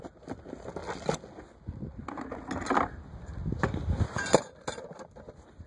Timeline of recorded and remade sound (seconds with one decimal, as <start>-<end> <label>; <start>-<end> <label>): 0.0-5.7 recorded